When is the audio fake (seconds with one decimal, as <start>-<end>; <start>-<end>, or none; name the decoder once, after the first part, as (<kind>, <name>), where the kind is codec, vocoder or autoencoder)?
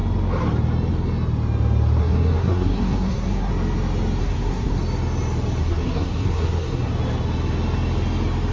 2.0-3.5 (codec, SNAC); 4.2-4.8; 5.6-6.9